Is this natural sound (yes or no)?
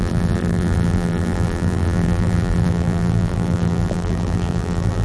no